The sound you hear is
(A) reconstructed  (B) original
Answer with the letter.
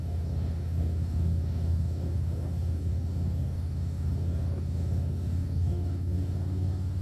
A